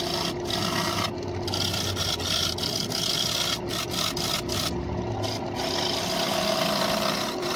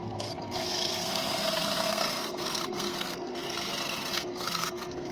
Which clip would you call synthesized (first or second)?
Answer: second